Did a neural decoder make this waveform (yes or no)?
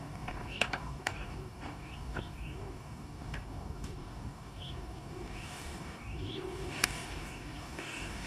yes